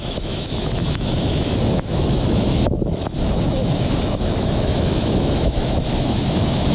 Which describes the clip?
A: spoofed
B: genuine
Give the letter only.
A